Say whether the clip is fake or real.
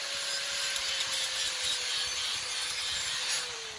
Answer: fake